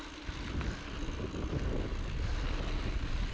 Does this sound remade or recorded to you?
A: recorded